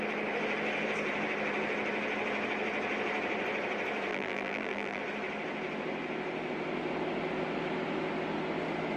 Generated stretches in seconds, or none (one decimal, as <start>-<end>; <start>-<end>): 4.1-5.0